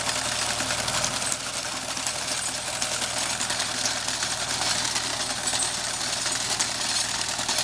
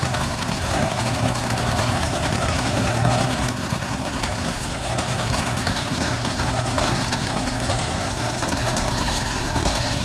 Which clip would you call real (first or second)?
first